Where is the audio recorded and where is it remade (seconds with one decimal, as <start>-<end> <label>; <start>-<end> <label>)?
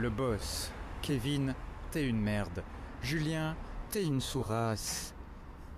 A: 0.0-3.9 recorded; 3.9-5.1 remade; 5.1-5.8 recorded